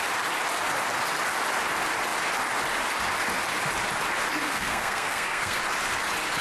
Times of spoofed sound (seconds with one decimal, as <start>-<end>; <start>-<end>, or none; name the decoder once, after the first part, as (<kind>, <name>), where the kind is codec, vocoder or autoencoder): 4.4-5.6 (codec, SNAC)